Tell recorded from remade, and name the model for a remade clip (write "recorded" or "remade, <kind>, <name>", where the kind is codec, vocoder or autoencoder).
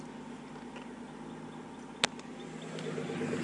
recorded